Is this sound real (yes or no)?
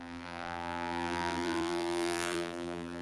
no